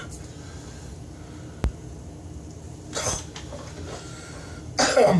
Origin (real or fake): real